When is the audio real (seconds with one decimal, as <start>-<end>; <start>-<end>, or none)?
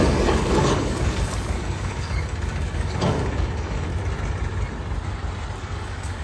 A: 3.9-5.6